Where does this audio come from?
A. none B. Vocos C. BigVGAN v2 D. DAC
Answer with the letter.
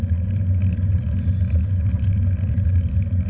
A